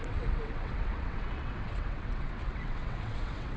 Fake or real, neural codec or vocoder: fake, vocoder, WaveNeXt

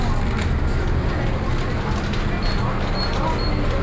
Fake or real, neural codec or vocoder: real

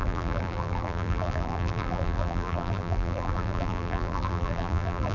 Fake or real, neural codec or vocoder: fake, vocoder, BigVGAN v2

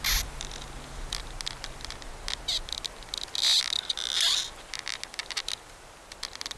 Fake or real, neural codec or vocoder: real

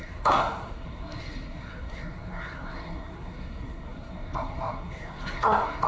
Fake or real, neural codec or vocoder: fake, codec, SNAC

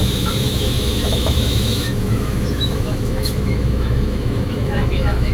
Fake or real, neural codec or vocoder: fake, autoencoder, DAC-VAE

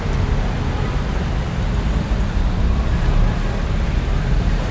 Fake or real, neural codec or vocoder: real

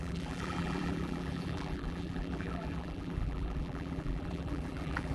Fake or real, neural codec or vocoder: fake, vocoder, BigVGAN v2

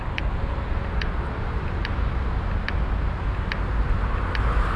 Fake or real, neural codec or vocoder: real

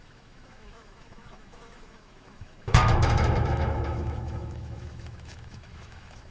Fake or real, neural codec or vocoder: fake, autoencoder, DAC-VAE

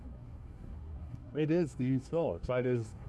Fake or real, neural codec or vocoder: fake, codec, SNAC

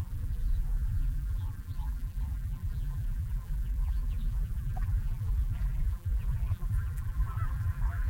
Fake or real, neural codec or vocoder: fake, vocoder, BigVGAN v2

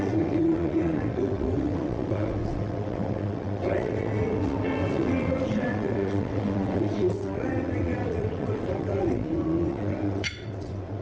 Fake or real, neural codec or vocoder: fake, vocoder, WaveNeXt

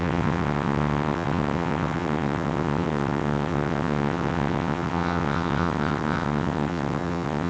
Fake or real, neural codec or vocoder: fake, vocoder, WaveNeXt